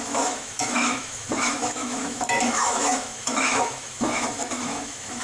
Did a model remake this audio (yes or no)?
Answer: yes